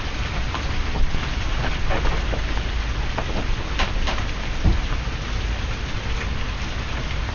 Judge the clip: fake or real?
real